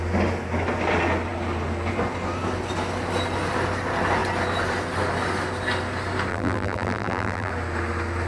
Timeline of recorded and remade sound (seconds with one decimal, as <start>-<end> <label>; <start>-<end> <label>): 0.0-6.3 recorded; 6.3-7.5 remade; 7.5-8.3 recorded